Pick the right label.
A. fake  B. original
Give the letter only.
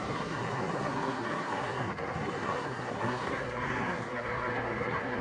A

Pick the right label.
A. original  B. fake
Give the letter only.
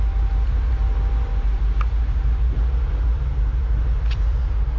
B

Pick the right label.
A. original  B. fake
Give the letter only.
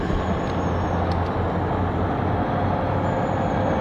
A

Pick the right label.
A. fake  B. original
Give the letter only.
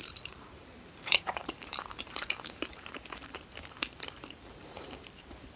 A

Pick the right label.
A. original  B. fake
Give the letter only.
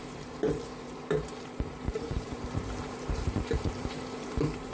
B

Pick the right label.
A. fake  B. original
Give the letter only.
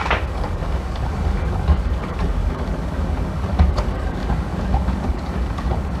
A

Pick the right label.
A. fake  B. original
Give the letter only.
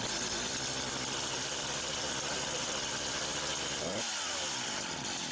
B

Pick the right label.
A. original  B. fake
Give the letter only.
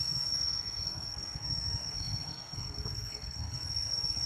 B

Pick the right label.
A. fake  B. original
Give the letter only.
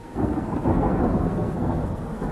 A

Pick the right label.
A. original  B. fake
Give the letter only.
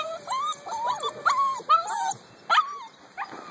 A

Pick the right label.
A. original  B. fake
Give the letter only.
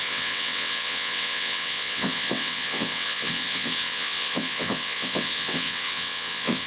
B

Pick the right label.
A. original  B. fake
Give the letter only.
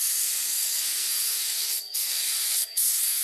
B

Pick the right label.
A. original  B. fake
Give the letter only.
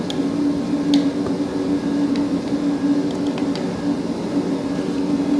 A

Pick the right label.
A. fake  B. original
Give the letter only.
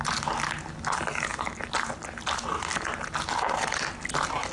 B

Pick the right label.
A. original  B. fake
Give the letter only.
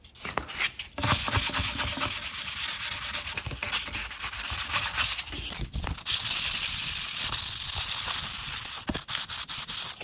A